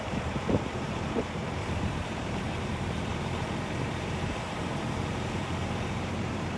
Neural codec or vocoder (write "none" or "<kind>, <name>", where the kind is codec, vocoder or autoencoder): vocoder, BigVGAN v2